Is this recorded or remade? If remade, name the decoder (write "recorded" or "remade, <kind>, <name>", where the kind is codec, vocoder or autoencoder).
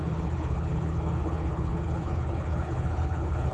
remade, codec, HILCodec